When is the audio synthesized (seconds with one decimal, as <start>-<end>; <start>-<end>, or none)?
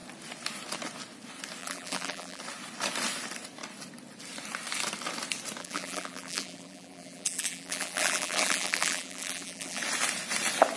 1.6-2.4; 5.6-9.8